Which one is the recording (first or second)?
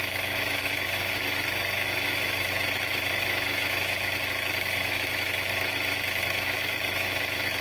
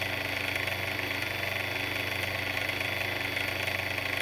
second